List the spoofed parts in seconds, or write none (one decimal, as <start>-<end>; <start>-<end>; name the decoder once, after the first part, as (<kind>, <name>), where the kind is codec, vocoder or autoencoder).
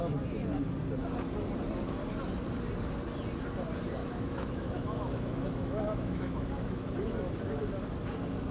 4.0-7.5 (autoencoder, DAC-VAE)